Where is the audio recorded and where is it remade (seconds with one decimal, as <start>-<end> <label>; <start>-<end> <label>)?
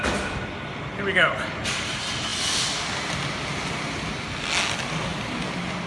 0.0-5.9 recorded